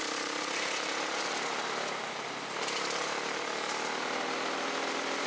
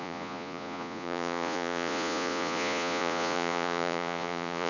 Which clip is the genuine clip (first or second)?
first